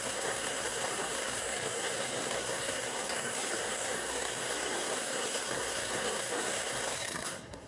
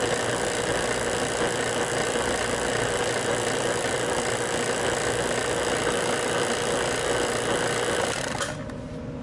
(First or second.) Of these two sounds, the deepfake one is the first